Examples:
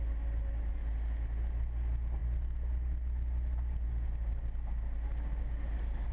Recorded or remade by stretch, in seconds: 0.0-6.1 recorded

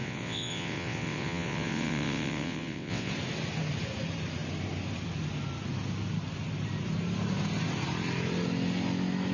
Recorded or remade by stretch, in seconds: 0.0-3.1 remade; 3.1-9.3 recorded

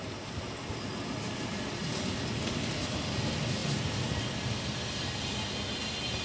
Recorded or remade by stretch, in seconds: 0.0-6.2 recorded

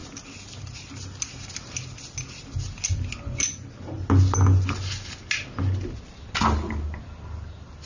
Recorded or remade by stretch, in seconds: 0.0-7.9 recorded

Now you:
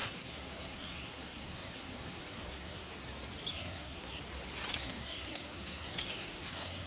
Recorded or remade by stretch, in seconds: 0.0-2.9 remade; 2.9-3.5 recorded; 3.5-4.2 remade; 4.2-4.7 recorded; 4.7-6.9 remade

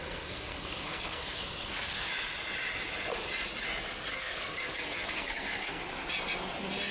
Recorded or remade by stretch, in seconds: 0.0-2.1 remade; 2.1-4.1 recorded; 4.1-5.8 remade; 5.8-6.9 recorded